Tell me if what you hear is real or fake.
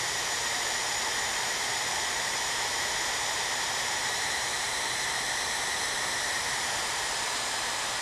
fake